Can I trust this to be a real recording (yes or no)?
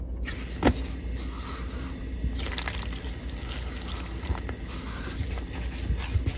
yes